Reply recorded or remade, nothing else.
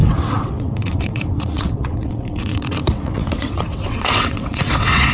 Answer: remade